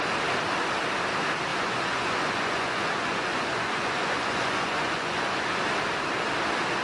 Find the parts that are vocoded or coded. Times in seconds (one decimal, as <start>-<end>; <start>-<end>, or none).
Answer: 1.5-5.6